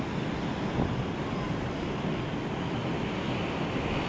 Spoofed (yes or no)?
no